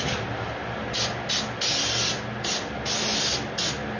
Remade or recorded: recorded